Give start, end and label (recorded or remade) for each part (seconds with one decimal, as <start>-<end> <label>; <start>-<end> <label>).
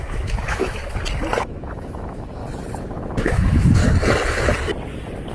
0.0-0.8 remade; 0.8-1.4 recorded; 1.4-2.4 remade; 2.4-3.2 recorded; 3.2-3.8 remade; 3.8-5.3 recorded